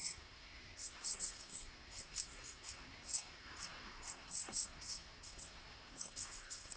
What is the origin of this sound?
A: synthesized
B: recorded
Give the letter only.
A